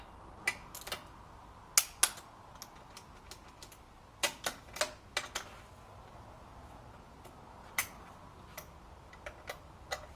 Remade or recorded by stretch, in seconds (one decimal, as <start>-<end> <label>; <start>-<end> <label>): 0.0-4.2 recorded; 4.2-4.8 remade; 4.8-10.2 recorded